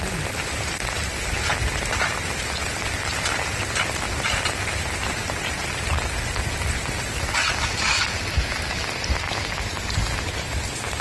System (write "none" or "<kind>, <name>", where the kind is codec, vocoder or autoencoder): none